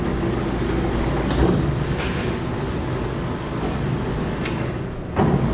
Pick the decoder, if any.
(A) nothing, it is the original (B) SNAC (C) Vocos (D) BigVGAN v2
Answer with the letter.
A